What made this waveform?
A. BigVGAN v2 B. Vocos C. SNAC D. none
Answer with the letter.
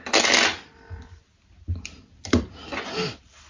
D